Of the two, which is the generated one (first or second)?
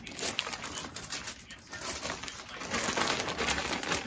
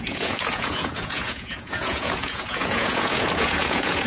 second